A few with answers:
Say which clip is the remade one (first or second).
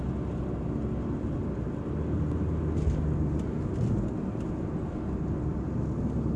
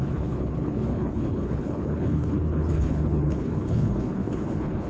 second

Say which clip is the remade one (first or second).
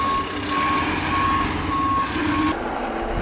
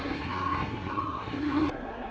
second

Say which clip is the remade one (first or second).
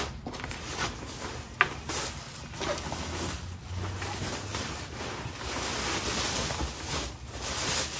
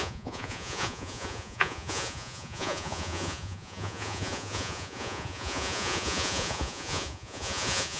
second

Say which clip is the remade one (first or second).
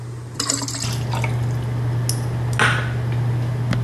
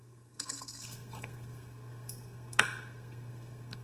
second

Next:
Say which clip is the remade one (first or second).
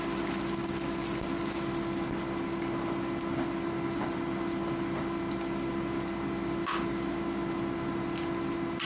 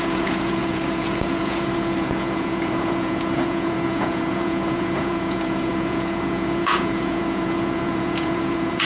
second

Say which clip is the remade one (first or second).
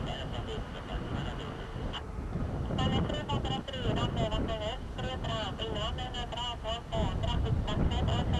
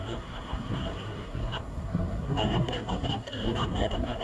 second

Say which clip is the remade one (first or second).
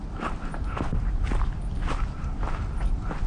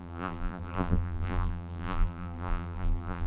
second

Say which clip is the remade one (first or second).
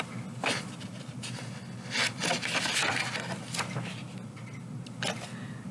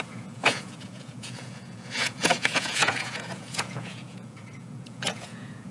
second